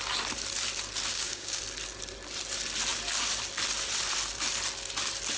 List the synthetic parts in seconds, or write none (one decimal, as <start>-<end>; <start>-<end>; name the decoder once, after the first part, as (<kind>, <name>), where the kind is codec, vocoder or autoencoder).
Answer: 1.1-1.6 (codec, DAC)

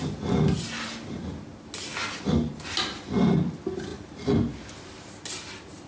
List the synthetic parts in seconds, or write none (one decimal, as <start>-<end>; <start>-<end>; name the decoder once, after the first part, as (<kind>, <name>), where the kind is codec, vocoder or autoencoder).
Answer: none